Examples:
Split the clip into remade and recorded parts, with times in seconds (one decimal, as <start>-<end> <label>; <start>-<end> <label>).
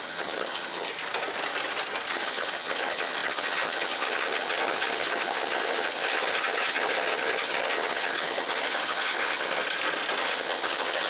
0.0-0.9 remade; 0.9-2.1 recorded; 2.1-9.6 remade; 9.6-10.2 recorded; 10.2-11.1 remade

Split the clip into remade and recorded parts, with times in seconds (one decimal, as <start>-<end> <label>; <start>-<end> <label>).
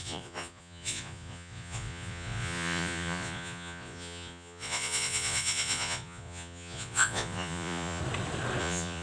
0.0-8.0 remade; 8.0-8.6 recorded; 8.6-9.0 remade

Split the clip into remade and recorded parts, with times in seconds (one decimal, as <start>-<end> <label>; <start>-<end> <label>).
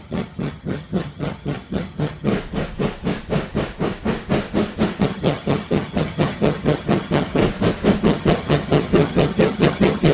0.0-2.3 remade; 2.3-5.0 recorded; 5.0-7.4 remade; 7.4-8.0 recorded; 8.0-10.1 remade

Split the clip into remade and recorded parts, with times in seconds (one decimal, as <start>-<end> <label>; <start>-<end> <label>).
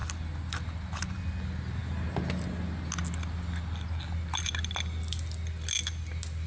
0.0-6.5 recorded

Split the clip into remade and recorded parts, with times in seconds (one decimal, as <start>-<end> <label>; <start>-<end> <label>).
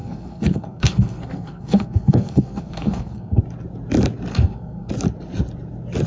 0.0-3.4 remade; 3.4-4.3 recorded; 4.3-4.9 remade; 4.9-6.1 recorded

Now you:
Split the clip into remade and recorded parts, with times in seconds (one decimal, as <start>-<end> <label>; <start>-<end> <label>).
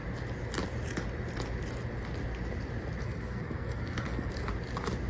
0.0-3.0 recorded; 3.0-4.3 remade; 4.3-5.1 recorded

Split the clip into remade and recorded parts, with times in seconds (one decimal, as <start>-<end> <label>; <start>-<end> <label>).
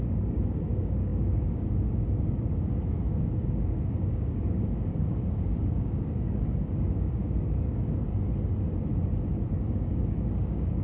0.0-8.1 remade; 8.1-9.7 recorded; 9.7-10.8 remade